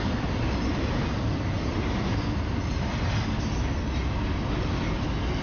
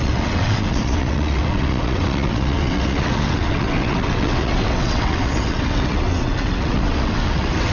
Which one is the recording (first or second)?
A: first